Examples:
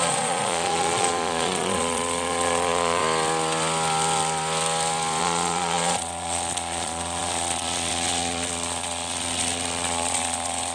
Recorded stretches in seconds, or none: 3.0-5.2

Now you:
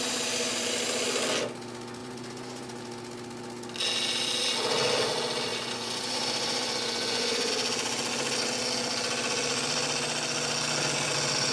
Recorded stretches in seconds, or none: 0.0-2.0; 2.8-5.5; 7.5-11.5

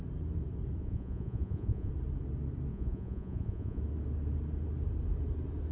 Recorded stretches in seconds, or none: 0.0-0.8; 1.9-2.7; 3.8-5.7

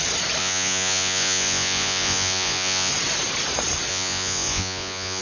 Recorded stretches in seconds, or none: 0.0-0.4; 2.9-3.9

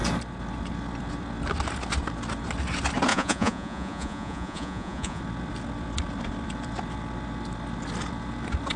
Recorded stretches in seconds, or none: 0.0-3.1; 5.2-8.8

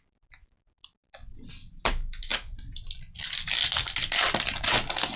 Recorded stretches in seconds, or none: 0.0-5.2

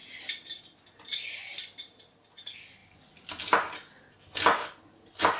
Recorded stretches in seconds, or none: 0.0-5.4